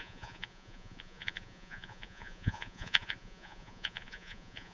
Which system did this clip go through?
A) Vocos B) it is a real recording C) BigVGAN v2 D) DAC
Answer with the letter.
A